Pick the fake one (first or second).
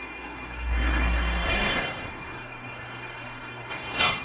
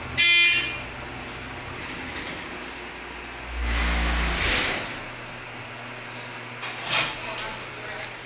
first